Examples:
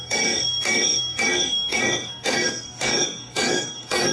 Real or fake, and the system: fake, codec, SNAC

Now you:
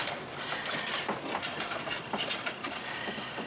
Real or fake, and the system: real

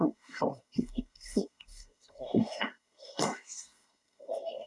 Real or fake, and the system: fake, codec, SNAC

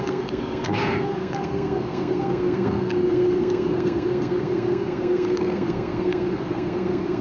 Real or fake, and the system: fake, codec, SNAC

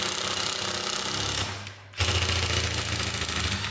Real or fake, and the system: real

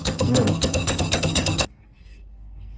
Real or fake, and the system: fake, codec, SNAC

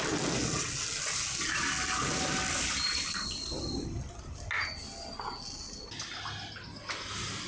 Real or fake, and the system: real